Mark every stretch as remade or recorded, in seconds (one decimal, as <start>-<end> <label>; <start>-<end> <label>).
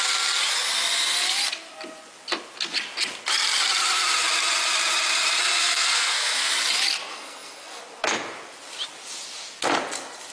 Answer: 0.0-5.6 recorded; 5.6-6.5 remade; 6.5-7.1 recorded; 7.1-7.8 remade; 7.8-10.3 recorded